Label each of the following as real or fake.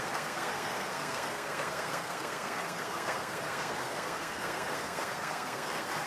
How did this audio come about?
fake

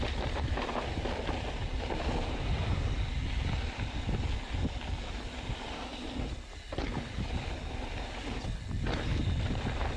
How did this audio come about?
real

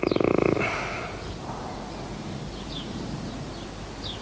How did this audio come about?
real